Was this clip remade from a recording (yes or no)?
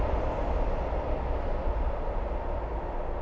no